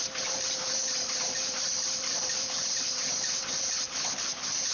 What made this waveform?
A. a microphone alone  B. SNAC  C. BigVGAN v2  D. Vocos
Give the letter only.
C